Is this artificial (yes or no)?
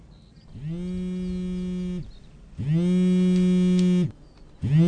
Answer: no